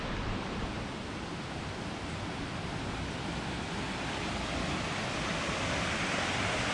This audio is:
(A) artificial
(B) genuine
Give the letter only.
A